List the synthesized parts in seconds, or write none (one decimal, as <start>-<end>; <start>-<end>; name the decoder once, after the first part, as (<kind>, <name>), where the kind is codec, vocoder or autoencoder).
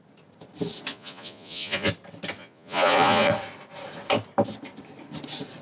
0.9-1.9 (vocoder, Vocos); 2.4-3.3